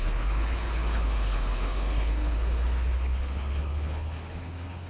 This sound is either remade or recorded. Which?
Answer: remade